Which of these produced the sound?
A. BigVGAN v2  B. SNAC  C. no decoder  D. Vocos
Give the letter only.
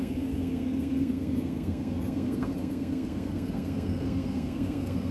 B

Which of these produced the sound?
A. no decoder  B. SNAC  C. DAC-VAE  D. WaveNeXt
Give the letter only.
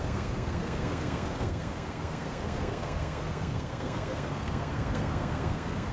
B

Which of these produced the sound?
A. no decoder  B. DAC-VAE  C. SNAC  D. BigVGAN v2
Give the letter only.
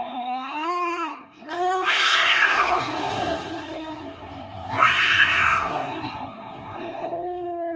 C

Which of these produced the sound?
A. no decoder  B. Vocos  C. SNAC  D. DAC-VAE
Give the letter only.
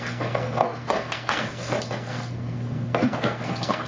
C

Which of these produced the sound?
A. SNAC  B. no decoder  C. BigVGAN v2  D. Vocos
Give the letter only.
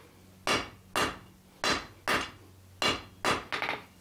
B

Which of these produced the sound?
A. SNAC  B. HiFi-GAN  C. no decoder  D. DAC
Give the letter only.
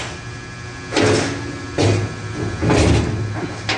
C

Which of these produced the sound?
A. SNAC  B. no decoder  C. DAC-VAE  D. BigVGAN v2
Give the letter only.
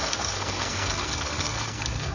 A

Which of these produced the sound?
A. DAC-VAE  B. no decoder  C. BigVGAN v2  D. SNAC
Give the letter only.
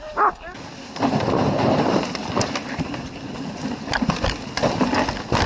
B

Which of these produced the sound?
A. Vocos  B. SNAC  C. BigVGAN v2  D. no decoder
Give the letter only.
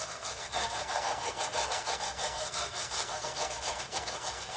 B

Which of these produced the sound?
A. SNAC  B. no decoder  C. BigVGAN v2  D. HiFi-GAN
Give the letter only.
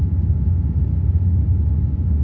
B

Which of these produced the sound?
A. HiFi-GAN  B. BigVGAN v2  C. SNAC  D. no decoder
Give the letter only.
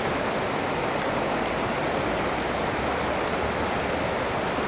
D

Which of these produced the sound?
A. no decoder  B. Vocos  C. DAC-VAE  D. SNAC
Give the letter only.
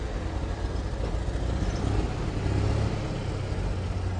A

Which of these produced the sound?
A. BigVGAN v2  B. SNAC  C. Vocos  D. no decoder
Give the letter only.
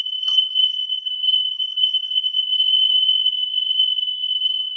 B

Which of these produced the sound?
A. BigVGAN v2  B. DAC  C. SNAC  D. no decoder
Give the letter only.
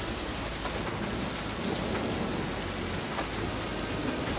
D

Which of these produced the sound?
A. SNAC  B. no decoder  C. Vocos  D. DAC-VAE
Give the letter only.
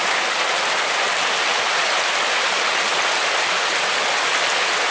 B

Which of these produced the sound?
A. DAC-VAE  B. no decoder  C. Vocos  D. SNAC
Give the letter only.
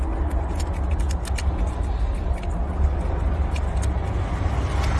B